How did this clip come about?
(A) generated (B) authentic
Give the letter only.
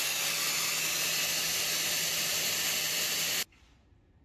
B